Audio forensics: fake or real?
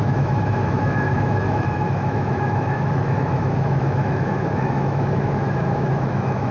fake